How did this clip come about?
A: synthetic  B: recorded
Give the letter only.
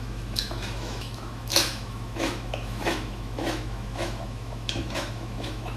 A